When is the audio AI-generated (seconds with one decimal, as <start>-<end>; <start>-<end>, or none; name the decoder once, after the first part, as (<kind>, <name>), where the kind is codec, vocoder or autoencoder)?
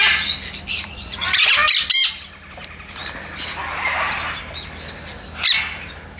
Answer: 0.7-1.5 (vocoder, Vocos)